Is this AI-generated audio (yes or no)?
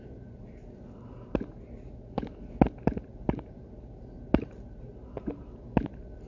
no